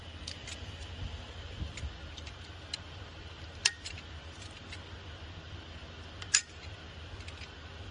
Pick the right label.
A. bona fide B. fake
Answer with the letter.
A